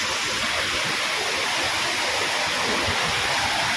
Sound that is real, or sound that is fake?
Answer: real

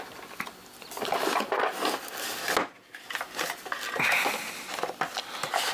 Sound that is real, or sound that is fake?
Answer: real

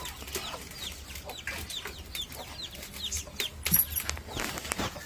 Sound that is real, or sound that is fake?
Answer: real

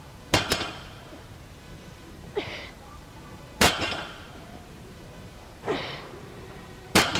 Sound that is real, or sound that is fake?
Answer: fake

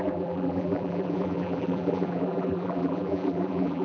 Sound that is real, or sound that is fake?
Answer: fake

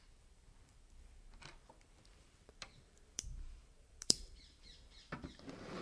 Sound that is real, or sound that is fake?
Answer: fake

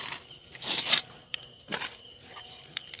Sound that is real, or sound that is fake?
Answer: fake